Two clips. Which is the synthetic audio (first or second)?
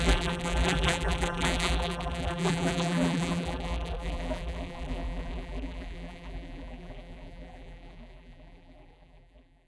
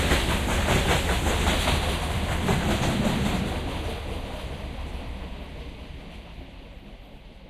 first